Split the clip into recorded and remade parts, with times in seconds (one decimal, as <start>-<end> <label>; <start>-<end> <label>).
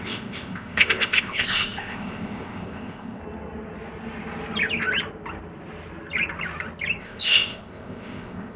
0.0-3.2 remade; 3.2-7.0 recorded; 7.0-8.6 remade